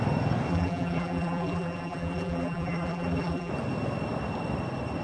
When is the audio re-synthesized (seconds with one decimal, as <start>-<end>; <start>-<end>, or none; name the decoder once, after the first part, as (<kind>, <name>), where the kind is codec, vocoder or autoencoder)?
0.5-3.5 (vocoder, BigVGAN v2)